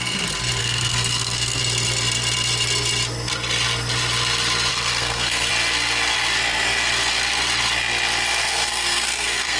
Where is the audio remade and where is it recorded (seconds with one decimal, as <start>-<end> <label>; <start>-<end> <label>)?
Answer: 0.0-0.6 recorded; 0.6-1.6 remade; 1.6-4.7 recorded; 4.7-5.5 remade; 5.5-8.5 recorded; 8.5-9.6 remade